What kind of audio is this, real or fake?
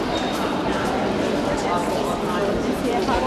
real